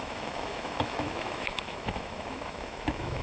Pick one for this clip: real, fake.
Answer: fake